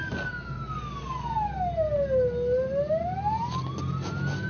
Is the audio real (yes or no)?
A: yes